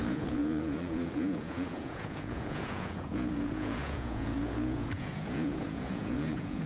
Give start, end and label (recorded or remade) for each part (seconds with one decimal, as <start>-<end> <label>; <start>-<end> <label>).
0.0-6.7 remade